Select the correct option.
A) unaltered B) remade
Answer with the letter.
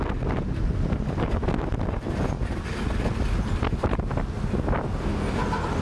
A